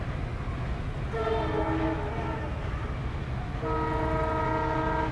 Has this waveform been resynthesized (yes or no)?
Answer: no